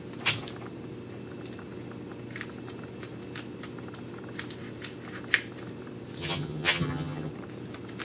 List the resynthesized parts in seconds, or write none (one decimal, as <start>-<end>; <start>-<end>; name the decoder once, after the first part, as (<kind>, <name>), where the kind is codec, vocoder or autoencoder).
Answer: 6.2-7.3 (vocoder, HiFi-GAN)